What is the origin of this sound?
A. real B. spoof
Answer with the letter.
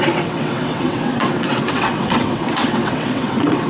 B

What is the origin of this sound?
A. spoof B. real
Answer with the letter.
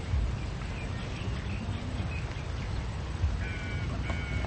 B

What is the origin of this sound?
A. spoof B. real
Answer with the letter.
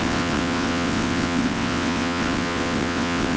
A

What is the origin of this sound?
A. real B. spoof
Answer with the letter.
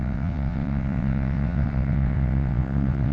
B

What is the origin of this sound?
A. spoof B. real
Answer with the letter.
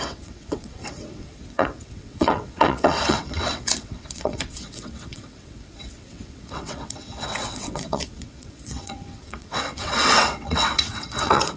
A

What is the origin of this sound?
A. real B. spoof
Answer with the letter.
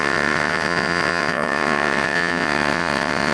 B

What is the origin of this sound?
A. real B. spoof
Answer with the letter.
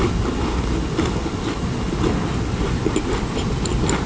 A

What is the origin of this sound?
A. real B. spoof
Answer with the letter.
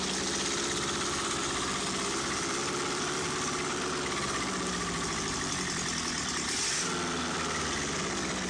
A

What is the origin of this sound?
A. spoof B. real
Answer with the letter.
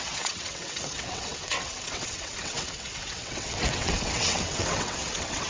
A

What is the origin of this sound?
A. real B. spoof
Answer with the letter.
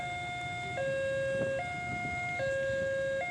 A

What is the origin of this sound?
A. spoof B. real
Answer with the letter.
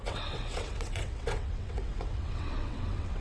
A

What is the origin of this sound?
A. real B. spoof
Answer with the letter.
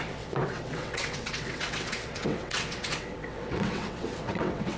B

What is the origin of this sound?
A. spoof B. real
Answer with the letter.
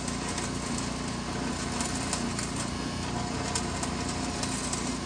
B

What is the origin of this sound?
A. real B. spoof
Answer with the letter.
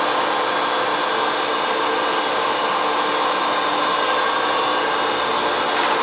A